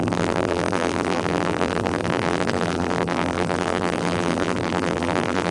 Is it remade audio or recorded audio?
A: remade